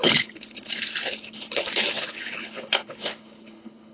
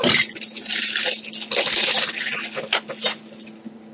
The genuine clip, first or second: second